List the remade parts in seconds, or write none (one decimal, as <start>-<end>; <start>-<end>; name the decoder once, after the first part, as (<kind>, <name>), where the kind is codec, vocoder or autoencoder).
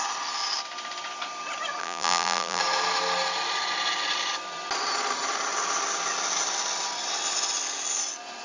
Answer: 1.8-2.6 (vocoder, BigVGAN v2)